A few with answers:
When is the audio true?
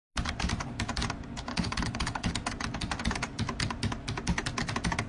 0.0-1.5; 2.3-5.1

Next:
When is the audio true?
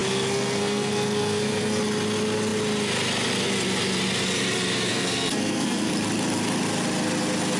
1.8-4.9; 5.9-7.6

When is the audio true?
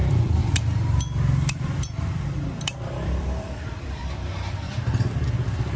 0.4-1.8; 4.0-5.8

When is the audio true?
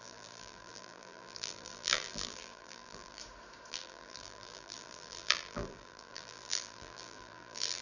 3.2-3.7